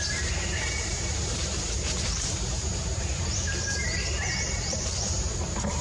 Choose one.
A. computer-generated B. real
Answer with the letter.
A